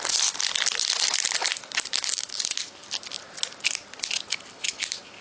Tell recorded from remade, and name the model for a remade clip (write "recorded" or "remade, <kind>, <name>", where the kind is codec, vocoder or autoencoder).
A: recorded